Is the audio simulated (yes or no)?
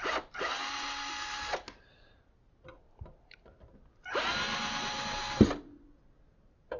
no